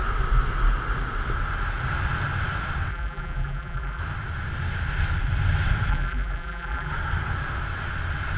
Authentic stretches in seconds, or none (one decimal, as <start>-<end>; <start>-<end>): 0.0-2.9; 4.0-5.9; 6.9-8.4